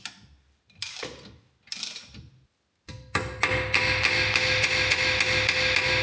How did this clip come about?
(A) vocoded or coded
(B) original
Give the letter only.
B